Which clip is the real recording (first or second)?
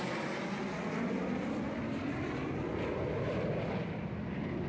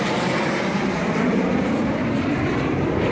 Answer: first